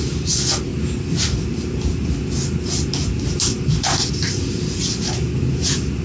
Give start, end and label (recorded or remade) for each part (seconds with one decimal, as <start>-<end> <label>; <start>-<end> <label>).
0.0-6.0 recorded